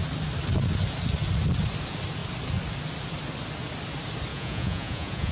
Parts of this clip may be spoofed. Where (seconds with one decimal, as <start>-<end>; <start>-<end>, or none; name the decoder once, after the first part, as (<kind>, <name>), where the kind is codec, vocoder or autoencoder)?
4.3-5.3 (vocoder, Vocos)